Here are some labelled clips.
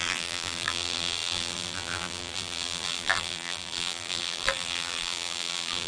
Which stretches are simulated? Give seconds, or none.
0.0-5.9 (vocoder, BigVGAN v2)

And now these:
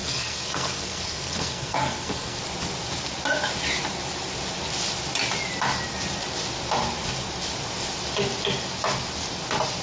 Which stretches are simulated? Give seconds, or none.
0.0-2.4 (codec, SNAC)

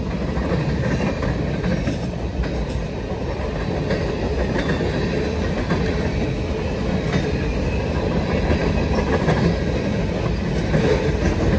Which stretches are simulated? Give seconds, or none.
none